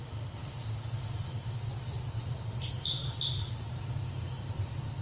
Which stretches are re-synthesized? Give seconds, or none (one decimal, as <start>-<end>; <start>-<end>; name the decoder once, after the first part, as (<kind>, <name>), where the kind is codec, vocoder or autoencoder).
none